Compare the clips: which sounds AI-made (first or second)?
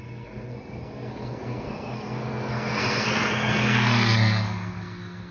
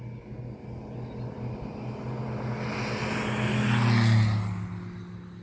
first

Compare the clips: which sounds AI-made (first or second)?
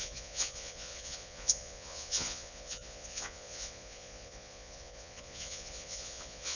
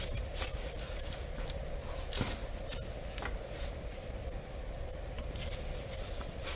first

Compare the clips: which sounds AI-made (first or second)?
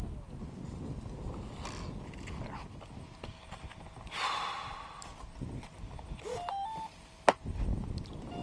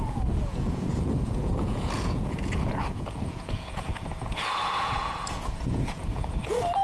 second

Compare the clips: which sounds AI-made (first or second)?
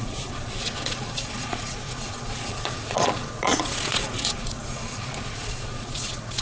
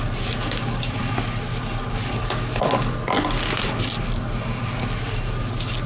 first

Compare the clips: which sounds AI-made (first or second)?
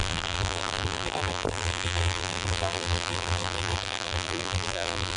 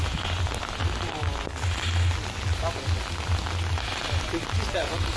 first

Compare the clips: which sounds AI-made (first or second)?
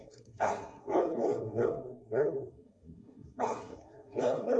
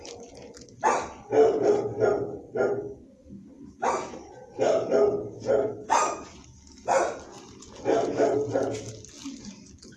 first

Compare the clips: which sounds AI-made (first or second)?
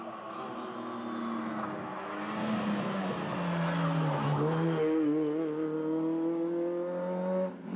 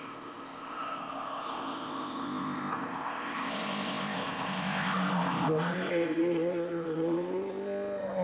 second